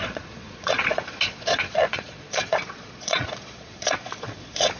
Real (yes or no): no